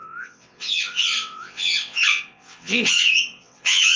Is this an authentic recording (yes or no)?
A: no